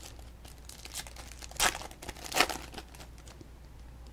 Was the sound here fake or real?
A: real